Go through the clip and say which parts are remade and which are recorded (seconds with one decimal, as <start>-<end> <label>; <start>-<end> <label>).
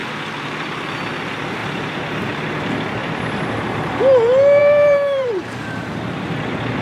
0.0-1.6 recorded; 1.6-4.0 remade; 4.0-4.6 recorded; 4.6-6.0 remade; 6.0-6.8 recorded